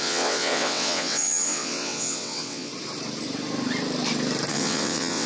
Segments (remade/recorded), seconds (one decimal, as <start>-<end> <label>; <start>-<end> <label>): 0.0-2.7 remade; 2.7-4.5 recorded; 4.5-5.3 remade